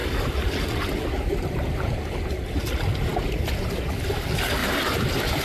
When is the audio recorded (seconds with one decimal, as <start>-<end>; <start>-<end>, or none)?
0.0-4.6

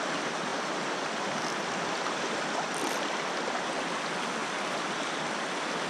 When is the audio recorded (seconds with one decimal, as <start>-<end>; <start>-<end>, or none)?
0.0-0.5; 3.7-4.4